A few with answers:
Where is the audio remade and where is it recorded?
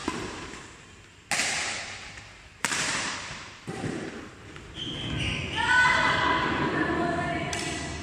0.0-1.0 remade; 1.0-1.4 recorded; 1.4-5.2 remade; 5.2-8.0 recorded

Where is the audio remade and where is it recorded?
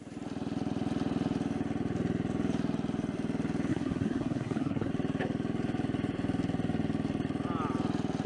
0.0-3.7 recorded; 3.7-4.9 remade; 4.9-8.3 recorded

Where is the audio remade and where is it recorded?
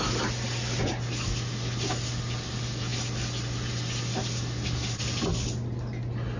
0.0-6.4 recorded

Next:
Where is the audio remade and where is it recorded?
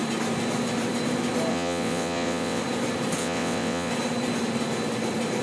0.0-1.5 recorded; 1.5-2.6 remade; 2.6-3.2 recorded; 3.2-3.9 remade; 3.9-5.4 recorded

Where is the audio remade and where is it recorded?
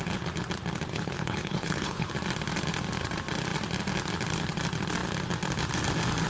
0.0-0.9 recorded; 0.9-2.1 remade; 2.1-6.3 recorded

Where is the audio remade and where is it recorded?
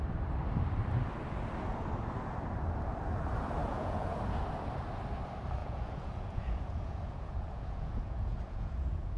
0.0-3.6 recorded; 3.6-4.2 remade; 4.2-5.6 recorded; 5.6-9.2 remade